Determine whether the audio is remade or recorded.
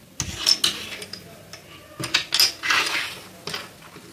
recorded